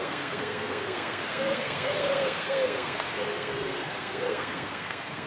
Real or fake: fake